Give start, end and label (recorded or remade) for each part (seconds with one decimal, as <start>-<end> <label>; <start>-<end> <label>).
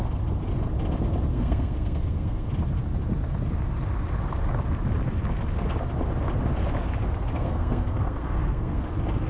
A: 0.0-1.3 recorded; 1.3-2.5 remade; 2.5-7.3 recorded; 7.3-8.8 remade; 8.8-9.3 recorded